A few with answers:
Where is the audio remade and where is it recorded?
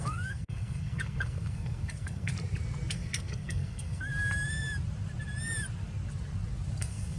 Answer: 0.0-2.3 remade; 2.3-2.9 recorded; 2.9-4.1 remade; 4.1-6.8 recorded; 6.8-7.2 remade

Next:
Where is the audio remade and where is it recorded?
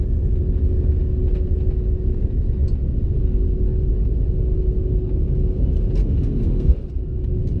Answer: 0.0-6.0 recorded; 6.0-6.9 remade; 6.9-7.6 recorded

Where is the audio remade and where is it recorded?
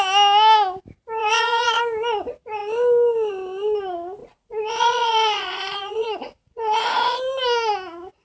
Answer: 0.0-1.2 recorded; 1.2-1.8 remade; 1.8-4.2 recorded; 4.2-7.2 remade; 7.2-8.2 recorded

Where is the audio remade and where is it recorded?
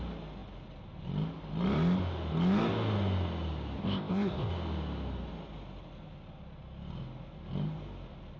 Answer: 0.0-3.8 recorded; 3.8-4.5 remade; 4.5-8.4 recorded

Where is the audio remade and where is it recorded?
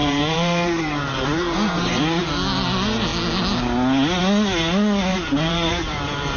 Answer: 0.0-2.2 remade; 2.2-5.1 recorded; 5.1-6.4 remade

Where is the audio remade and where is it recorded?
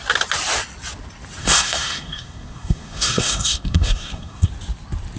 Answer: 0.0-1.4 recorded; 1.4-4.5 remade; 4.5-5.2 recorded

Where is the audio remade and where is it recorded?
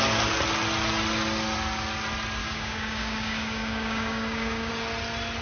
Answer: 0.0-2.4 recorded; 2.4-4.7 remade; 4.7-5.4 recorded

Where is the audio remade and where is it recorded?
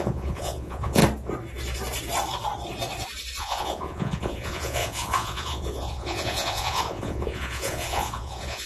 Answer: 0.0-1.0 remade; 1.0-3.4 recorded; 3.4-8.7 remade